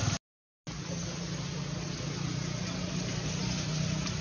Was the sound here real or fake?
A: real